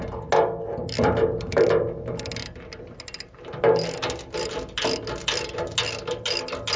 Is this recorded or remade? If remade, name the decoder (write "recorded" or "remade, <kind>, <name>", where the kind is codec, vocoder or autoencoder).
recorded